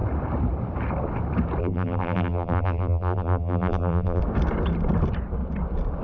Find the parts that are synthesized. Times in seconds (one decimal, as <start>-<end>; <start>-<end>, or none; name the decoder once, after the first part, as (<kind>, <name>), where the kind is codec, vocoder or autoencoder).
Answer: 1.6-4.2 (vocoder, BigVGAN v2)